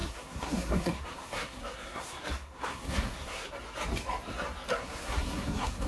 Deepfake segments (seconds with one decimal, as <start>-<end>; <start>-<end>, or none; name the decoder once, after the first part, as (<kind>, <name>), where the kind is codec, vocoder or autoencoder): 0.0-3.5 (codec, SNAC); 4.7-5.9